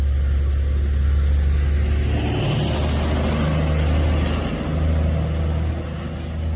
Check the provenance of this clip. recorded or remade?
recorded